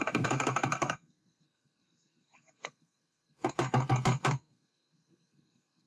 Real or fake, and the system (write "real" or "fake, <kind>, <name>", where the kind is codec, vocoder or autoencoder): fake, codec, SNAC